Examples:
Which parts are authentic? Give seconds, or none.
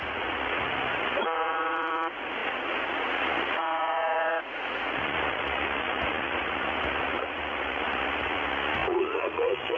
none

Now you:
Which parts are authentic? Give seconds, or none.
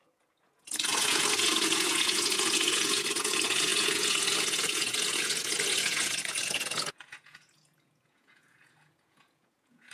none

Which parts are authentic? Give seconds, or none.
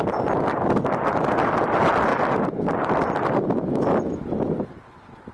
0.0-5.3